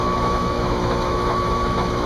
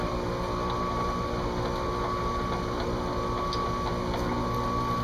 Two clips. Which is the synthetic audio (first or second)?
first